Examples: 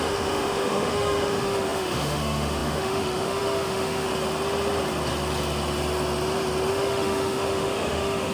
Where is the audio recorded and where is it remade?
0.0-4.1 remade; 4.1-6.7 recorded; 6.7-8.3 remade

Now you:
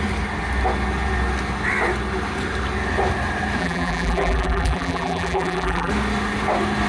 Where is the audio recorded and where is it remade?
0.0-3.6 recorded; 3.6-5.9 remade; 5.9-6.9 recorded

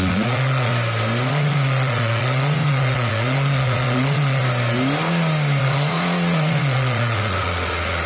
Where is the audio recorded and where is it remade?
0.0-0.7 remade; 0.7-1.3 recorded; 1.3-4.4 remade; 4.4-5.6 recorded; 5.6-8.1 remade

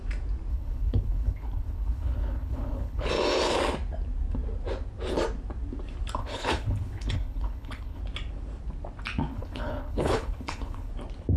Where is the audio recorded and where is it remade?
0.0-0.5 recorded; 0.5-3.1 remade; 3.1-6.2 recorded; 6.2-8.0 remade; 8.0-9.3 recorded; 9.3-10.9 remade; 10.9-11.4 recorded